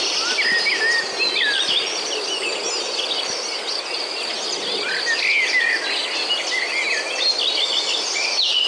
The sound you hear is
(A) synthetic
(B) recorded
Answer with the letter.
B